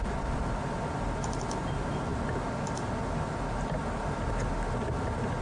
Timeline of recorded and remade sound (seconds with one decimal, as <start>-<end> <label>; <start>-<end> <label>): 0.0-5.4 recorded